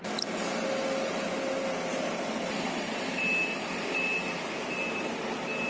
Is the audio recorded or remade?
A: recorded